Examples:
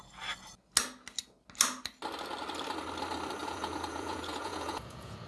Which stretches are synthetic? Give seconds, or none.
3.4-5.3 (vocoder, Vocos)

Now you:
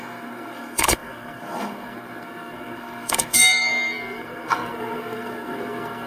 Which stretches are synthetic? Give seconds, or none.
0.0-6.1 (codec, SNAC)

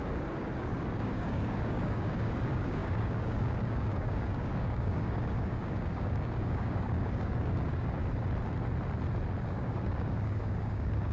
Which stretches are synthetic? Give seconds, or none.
0.0-8.0 (codec, DAC); 9.5-11.1

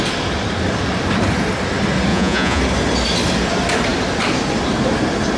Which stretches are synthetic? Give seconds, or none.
2.1-2.6 (vocoder, Vocos)

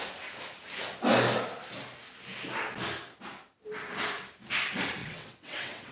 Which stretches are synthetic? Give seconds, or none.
5.0-5.9 (vocoder, WaveNeXt)

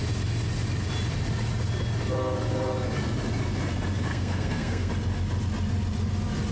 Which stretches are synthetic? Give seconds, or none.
4.1-4.9 (codec, SNAC)

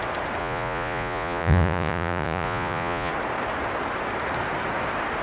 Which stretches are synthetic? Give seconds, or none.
0.4-3.1 (vocoder, Vocos)

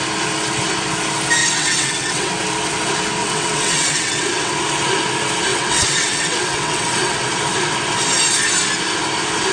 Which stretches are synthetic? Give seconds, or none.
1.4-2.3 (vocoder, WaveNeXt); 3.2-4.5; 5.5-7.2